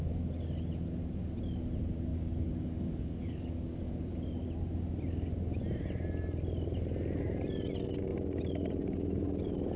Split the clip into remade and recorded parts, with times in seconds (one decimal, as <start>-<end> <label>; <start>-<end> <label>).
0.0-2.1 recorded; 2.1-3.9 remade; 3.9-9.8 recorded